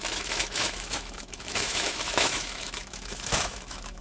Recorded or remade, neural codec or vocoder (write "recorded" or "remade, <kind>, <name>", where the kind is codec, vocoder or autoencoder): remade, autoencoder, DAC-VAE